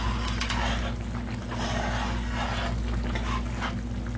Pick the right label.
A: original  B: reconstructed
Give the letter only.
A